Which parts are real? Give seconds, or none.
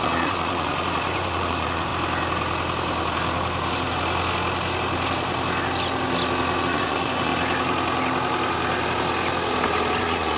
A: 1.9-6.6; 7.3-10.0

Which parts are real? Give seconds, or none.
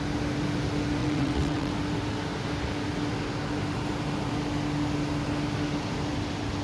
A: 0.0-1.0; 1.7-6.6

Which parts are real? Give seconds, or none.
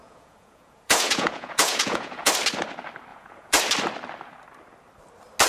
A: 2.3-3.1; 3.6-5.5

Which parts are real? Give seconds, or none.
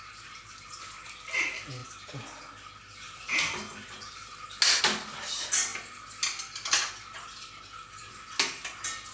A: 0.0-9.1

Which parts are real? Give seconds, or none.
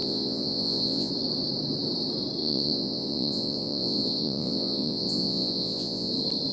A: 1.1-2.4; 6.1-6.5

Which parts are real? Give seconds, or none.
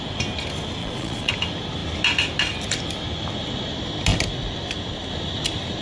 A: 0.0-0.8; 1.3-5.8